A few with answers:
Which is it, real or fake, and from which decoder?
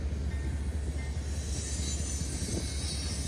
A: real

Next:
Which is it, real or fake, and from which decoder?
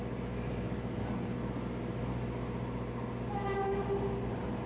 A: real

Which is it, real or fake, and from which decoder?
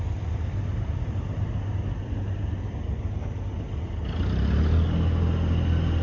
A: real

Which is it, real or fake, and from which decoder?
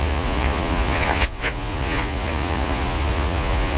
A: fake, vocoder, Vocos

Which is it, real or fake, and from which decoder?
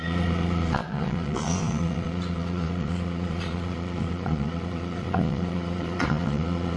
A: fake, vocoder, Vocos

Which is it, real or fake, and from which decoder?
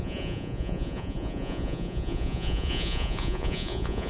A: fake, vocoder, Vocos